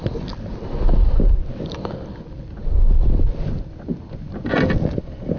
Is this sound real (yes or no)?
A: yes